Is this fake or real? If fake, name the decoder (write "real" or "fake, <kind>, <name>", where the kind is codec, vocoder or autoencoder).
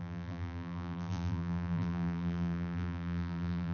fake, vocoder, BigVGAN v2